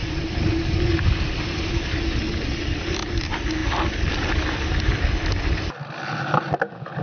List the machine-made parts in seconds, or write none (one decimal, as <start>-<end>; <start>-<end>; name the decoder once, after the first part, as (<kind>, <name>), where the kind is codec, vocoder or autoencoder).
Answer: none